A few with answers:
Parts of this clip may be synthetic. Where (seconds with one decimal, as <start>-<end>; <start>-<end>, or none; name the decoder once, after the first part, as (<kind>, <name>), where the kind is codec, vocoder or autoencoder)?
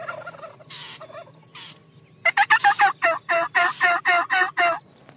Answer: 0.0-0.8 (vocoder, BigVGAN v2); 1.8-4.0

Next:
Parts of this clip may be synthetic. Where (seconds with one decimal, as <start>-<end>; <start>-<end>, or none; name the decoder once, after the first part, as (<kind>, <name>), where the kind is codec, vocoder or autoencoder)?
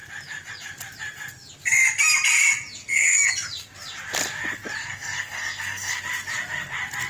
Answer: 2.8-3.3 (codec, SNAC); 4.8-6.0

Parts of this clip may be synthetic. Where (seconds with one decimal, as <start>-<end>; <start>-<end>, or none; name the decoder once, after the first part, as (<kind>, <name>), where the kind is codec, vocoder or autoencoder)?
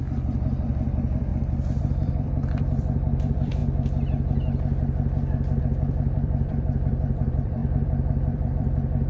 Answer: 0.0-1.3 (vocoder, BigVGAN v2); 1.8-3.6; 5.6-9.1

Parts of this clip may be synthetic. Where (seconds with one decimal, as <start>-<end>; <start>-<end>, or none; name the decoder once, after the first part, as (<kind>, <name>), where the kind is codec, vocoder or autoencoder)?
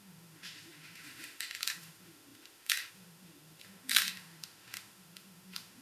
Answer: 0.0-5.8 (autoencoder, DAC-VAE)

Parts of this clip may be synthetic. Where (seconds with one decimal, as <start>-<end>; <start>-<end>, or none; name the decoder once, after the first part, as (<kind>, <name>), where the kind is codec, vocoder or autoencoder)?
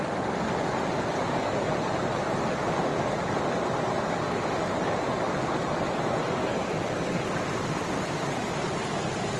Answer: none